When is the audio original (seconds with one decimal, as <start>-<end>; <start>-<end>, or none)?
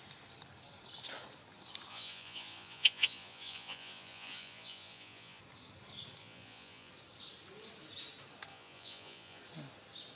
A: 0.0-1.9; 5.4-6.2; 6.9-8.5; 9.4-10.2